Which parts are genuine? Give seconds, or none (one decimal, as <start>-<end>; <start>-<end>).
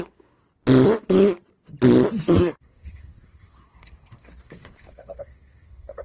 0.4-2.4